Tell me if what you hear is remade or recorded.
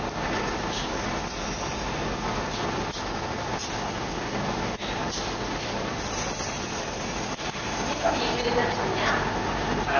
recorded